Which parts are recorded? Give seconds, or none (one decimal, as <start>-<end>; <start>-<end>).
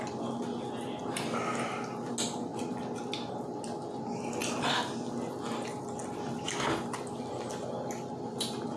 0.0-8.8